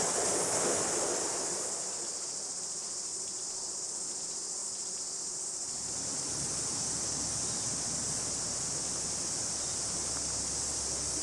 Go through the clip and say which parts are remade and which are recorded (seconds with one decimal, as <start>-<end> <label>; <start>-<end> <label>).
0.0-3.1 recorded; 3.1-3.9 remade; 3.9-11.2 recorded